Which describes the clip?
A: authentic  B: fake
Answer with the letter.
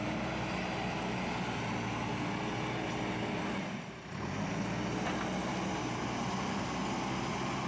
A